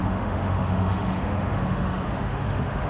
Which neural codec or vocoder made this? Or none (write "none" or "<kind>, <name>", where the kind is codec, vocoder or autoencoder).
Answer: autoencoder, DAC-VAE